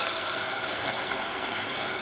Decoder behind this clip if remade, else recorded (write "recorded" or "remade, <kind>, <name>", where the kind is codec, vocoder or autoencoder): remade, codec, SNAC